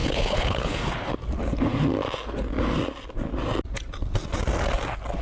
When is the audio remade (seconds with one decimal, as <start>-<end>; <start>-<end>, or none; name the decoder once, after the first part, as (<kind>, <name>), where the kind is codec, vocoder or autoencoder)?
0.0-1.1 (codec, HILCodec)